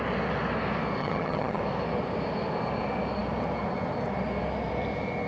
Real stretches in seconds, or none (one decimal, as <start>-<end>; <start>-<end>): 0.0-1.0; 1.6-5.3